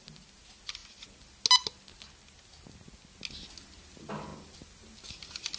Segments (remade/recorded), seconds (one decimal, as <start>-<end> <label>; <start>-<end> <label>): 0.0-5.6 recorded